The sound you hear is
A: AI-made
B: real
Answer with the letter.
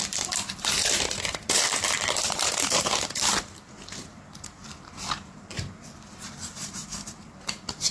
A